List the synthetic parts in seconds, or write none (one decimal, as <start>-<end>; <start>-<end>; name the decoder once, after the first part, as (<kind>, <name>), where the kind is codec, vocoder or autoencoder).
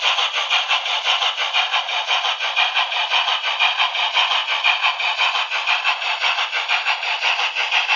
none